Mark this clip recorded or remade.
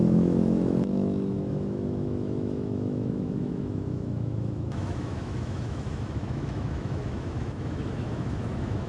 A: remade